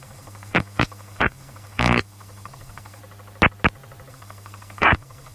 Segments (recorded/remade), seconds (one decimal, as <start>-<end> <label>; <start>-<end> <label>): 0.0-3.0 remade; 3.0-4.1 recorded; 4.1-5.3 remade